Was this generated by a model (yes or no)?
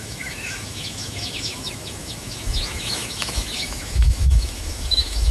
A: yes